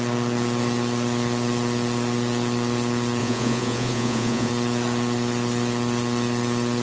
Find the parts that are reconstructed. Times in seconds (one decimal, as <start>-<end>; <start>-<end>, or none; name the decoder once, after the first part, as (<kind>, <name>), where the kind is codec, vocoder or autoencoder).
3.2-4.5 (vocoder, Vocos)